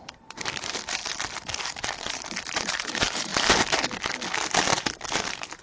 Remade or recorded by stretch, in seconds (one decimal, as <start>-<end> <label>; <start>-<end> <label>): 0.0-1.0 remade; 1.0-2.1 recorded; 2.1-3.3 remade; 3.3-4.7 recorded; 4.7-5.6 remade